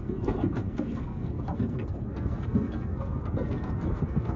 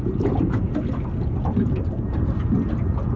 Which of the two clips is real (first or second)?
second